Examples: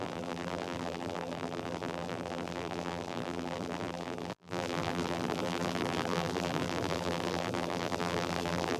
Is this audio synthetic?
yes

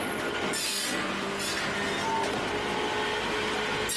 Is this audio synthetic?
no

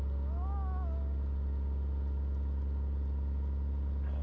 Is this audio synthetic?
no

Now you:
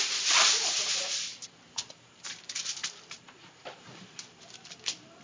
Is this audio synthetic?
yes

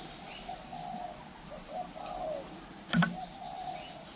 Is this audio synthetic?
no